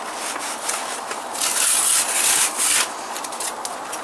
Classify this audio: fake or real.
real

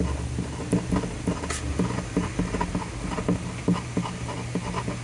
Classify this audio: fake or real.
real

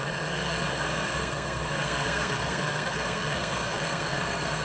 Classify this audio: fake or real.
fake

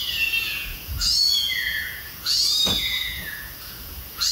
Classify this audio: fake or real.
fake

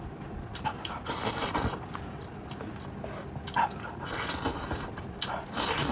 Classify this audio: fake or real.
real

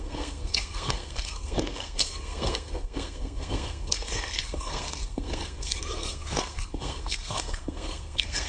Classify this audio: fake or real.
fake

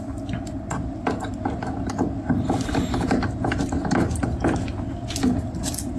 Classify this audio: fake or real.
real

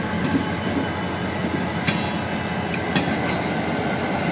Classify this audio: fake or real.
real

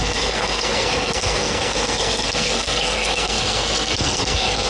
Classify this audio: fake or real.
fake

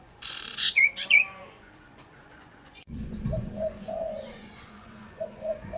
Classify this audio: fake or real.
fake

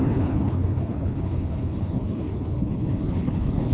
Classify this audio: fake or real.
fake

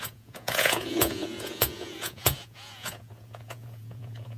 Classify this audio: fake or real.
fake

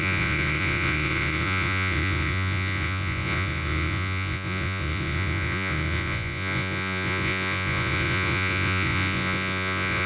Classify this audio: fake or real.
fake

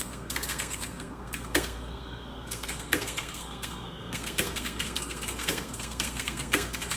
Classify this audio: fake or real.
fake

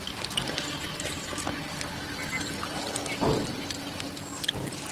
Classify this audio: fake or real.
real